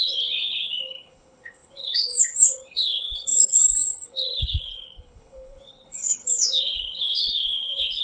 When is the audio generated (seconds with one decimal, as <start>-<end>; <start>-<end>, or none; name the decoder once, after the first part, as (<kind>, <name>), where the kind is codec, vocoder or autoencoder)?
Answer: 0.0-8.0 (codec, HILCodec)